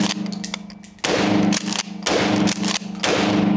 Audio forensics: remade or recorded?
recorded